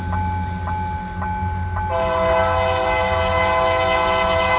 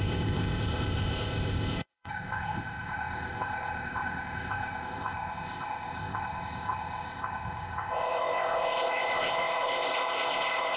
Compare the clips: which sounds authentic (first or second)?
first